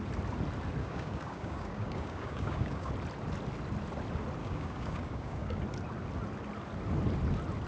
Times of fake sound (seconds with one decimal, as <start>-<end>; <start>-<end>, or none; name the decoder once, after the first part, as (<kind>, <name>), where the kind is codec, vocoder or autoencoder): 0.8-2.9 (codec, DAC); 4.4-5.6